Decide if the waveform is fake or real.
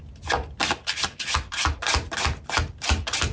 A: real